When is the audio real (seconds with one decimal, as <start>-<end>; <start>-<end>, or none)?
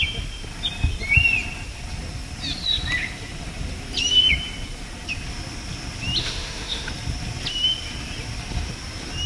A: 0.0-6.2; 6.9-9.3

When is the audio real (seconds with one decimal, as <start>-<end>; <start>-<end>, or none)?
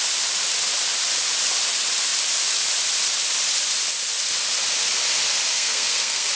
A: 0.0-5.5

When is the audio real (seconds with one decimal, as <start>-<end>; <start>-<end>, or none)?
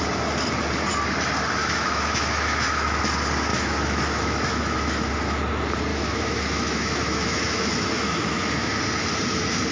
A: 0.0-1.6; 3.0-3.5; 5.1-5.9; 8.8-9.7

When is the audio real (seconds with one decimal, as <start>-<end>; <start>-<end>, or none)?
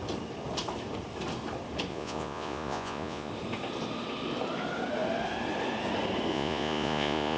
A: 0.0-1.9; 3.3-6.3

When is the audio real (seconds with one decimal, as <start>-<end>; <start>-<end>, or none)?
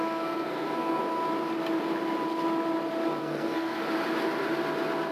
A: 1.0-3.2; 3.8-5.1